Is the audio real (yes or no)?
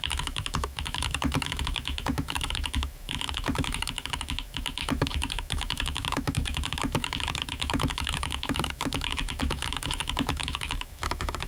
no